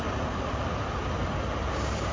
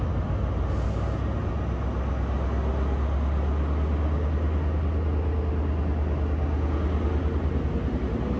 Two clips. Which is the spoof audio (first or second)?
first